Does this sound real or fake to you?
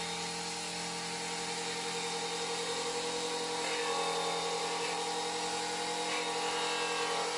real